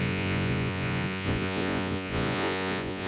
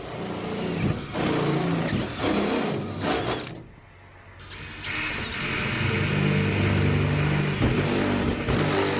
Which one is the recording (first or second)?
second